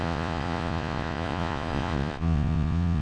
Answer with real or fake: fake